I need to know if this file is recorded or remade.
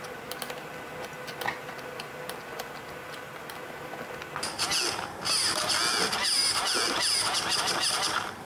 recorded